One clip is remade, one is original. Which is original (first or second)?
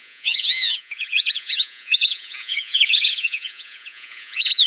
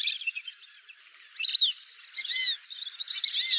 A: second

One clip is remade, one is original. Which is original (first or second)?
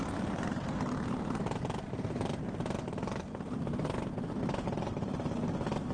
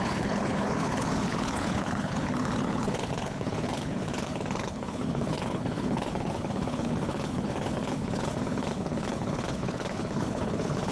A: first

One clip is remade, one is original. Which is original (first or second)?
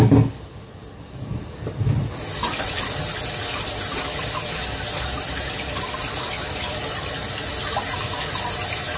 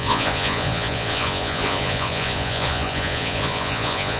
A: first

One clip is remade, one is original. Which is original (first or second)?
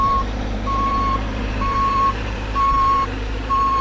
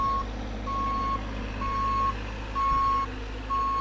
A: second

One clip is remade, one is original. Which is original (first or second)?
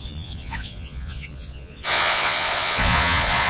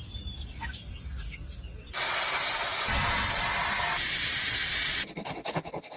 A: second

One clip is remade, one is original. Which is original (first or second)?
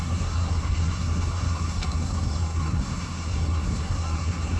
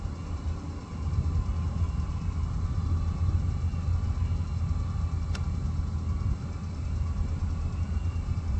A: second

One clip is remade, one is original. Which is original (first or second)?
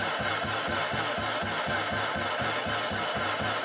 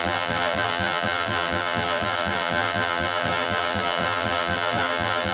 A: first